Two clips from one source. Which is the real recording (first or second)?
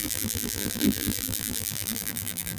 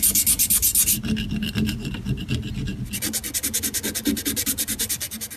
second